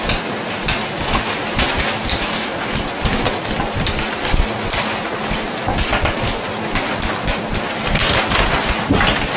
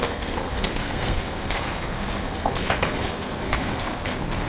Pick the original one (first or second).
first